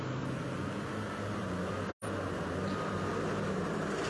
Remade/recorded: recorded